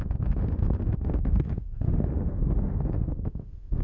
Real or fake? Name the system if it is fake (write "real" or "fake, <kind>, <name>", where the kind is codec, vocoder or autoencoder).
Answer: fake, autoencoder, DAC-VAE